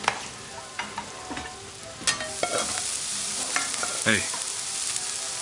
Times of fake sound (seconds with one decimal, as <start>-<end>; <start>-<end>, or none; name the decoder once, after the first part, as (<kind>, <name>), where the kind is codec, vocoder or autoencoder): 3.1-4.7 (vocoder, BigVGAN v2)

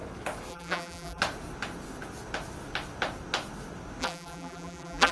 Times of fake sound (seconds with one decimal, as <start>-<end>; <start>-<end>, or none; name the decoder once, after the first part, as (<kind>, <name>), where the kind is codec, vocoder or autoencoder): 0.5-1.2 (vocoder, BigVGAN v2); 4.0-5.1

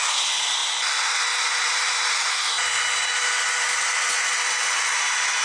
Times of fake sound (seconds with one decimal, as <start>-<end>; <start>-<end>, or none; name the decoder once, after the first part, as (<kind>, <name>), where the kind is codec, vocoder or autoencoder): none

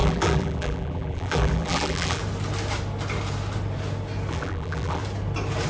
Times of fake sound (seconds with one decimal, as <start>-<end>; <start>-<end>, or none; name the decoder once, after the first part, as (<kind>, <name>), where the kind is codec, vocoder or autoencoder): 0.0-2.2 (vocoder, BigVGAN v2); 4.3-5.0